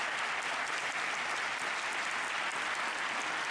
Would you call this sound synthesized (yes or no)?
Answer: no